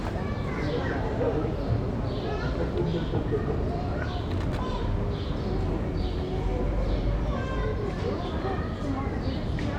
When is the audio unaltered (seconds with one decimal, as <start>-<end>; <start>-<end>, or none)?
0.0-2.9; 4.2-6.5; 8.3-9.8